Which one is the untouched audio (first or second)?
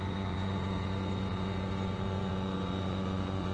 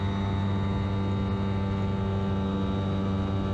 second